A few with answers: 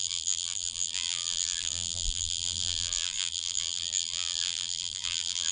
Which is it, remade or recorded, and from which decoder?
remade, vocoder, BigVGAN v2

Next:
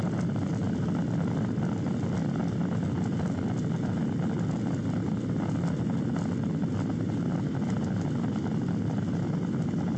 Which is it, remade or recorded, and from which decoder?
recorded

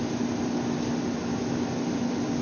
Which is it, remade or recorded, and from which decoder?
recorded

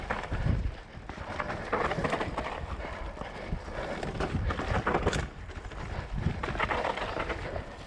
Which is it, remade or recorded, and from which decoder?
recorded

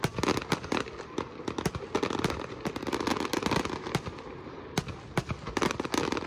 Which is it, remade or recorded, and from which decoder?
recorded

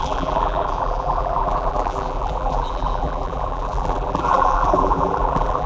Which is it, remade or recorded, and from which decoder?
remade, vocoder, BigVGAN v2